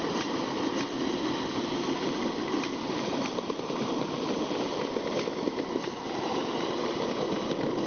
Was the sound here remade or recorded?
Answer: recorded